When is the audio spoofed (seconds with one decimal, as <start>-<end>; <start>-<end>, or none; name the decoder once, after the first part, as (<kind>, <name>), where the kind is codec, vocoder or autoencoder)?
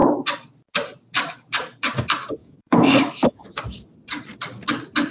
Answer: 2.4-3.6 (autoencoder, DAC-VAE)